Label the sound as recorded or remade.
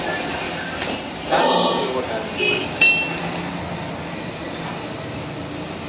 recorded